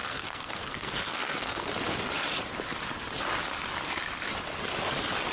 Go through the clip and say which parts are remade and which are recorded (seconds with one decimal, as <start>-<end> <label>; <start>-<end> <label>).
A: 0.0-1.7 remade; 1.7-5.3 recorded